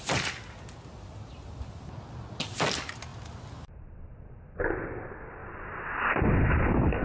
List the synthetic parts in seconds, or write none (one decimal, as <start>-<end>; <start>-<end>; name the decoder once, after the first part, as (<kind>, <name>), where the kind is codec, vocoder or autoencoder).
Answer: none